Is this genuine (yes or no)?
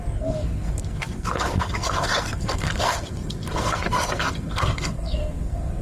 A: no